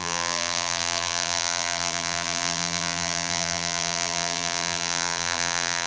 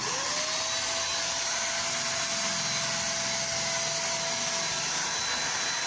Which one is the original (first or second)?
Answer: second